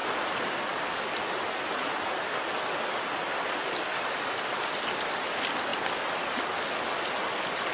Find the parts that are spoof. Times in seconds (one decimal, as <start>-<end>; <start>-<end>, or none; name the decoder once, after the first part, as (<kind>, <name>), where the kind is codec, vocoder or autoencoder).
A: none